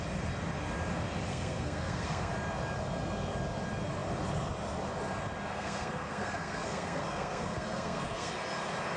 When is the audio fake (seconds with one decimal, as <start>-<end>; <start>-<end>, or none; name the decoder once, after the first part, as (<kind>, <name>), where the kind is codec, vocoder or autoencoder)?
1.3-2.3 (codec, SNAC); 5.5-8.3